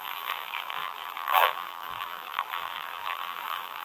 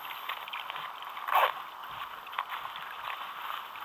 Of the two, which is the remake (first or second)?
first